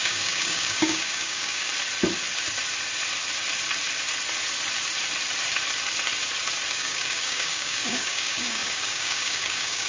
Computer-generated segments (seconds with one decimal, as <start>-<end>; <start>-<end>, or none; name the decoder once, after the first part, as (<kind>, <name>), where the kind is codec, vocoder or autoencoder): 0.0-1.7 (codec, DAC); 6.7-9.9